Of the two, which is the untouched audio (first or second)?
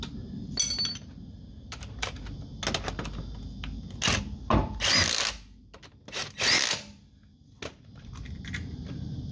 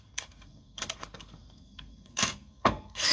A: first